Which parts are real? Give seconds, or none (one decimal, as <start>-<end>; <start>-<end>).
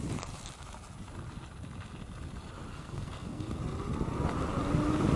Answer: 0.0-2.7; 3.6-5.2